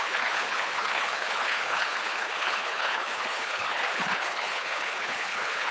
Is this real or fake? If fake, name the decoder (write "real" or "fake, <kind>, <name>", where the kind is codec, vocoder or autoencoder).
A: fake, codec, HILCodec